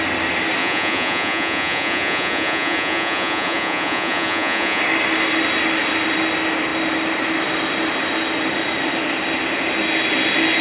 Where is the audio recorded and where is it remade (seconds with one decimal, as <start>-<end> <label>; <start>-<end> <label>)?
0.0-0.6 recorded; 0.6-4.8 remade; 4.8-10.6 recorded